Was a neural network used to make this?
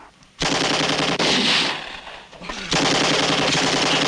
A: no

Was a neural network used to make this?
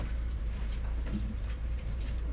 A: yes